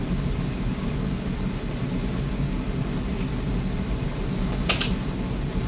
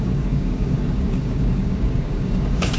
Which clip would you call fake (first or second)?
second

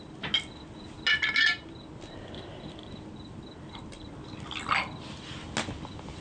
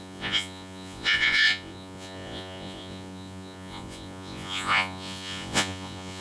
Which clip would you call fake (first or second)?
second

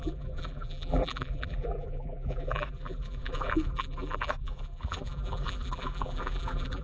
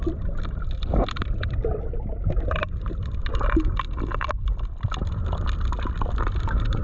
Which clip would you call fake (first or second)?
first